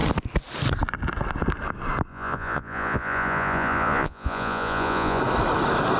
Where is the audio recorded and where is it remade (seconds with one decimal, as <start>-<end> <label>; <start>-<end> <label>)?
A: 0.0-2.1 recorded; 2.1-5.2 remade; 5.2-6.0 recorded